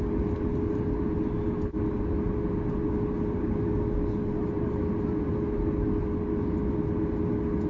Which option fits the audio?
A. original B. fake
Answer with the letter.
A